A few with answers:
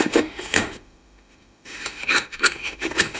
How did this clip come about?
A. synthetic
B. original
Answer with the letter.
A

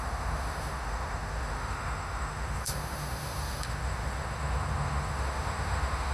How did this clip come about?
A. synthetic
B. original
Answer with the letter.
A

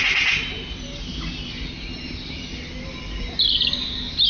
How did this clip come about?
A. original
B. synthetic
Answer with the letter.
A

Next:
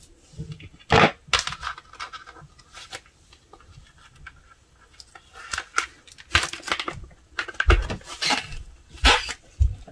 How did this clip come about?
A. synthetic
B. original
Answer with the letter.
B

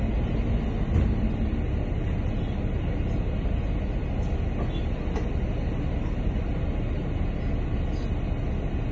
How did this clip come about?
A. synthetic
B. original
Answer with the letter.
B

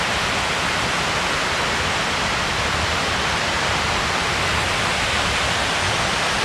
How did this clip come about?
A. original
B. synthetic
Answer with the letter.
A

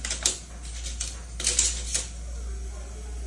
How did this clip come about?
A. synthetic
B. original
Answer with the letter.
B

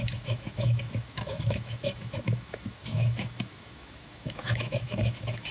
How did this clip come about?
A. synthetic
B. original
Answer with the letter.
A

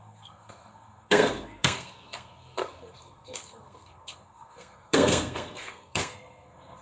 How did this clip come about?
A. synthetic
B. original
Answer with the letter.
A